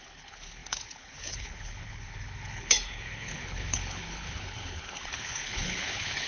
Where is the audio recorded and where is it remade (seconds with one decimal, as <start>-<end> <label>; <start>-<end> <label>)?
0.0-6.3 remade